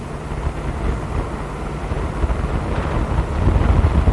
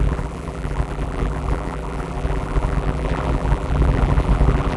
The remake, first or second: second